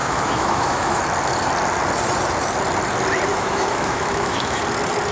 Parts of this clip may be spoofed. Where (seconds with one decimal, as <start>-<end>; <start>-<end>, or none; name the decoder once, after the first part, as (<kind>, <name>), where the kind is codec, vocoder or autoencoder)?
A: 0.0-1.0 (autoencoder, DAC-VAE); 3.3-4.6